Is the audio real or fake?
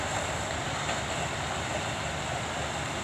real